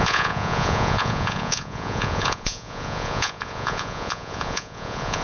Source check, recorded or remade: remade